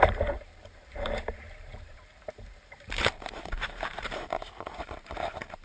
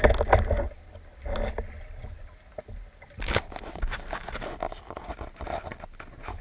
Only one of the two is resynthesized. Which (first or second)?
first